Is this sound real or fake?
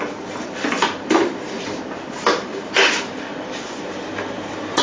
fake